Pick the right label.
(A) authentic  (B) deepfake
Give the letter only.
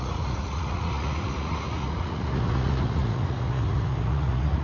B